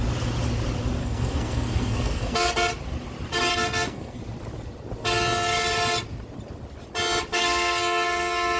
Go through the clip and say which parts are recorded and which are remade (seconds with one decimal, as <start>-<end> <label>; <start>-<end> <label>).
0.0-1.0 recorded; 1.0-2.7 remade; 2.7-3.5 recorded; 3.5-4.2 remade; 4.2-7.4 recorded; 7.4-8.6 remade